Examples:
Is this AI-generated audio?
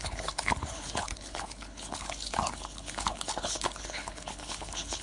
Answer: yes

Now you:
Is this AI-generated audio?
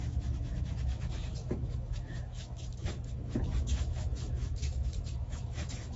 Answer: yes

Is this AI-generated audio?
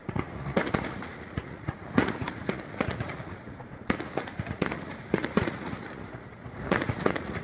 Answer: yes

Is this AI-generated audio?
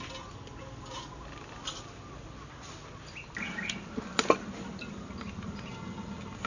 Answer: no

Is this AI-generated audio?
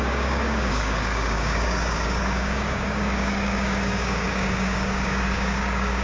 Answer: yes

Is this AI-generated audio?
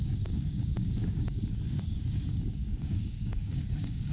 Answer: yes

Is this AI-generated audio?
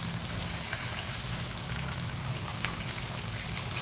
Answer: yes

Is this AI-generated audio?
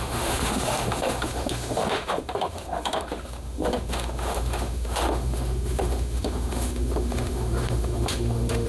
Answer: yes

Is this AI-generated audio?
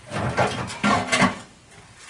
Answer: no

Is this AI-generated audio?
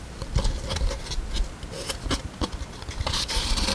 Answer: no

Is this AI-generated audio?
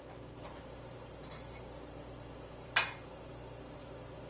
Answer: no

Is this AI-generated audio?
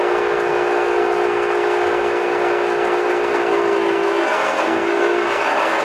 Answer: yes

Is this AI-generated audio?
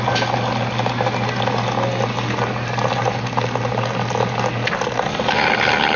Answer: no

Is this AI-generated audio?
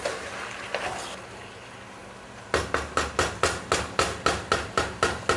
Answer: no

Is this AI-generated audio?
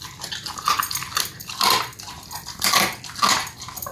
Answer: no